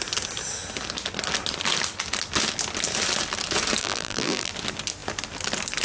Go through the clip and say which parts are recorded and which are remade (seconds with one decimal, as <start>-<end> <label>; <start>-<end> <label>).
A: 0.0-3.8 recorded; 3.8-4.5 remade; 4.5-5.8 recorded